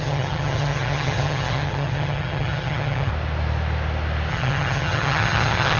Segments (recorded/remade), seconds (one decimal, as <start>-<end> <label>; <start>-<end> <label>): 0.0-3.1 remade; 3.1-4.3 recorded; 4.3-5.8 remade